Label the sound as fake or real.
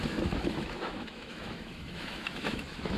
fake